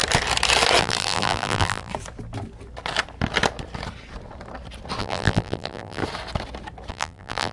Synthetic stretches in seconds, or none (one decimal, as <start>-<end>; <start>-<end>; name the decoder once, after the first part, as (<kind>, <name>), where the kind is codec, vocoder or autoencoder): 0.8-1.9 (vocoder, BigVGAN v2); 5.0-6.0; 6.9-7.5